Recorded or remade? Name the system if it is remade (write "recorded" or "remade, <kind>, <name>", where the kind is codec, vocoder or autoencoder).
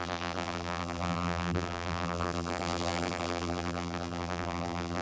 remade, vocoder, BigVGAN v2